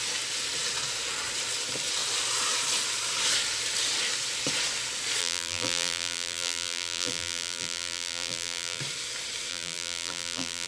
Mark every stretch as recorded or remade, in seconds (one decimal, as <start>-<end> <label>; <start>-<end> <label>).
0.0-5.2 recorded; 5.2-8.8 remade; 8.8-9.5 recorded; 9.5-10.7 remade